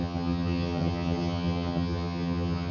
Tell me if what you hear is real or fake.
fake